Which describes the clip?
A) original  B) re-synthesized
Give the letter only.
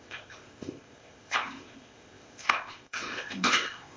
B